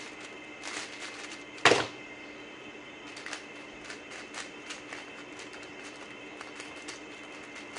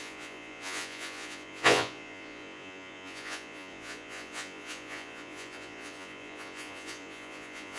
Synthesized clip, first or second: second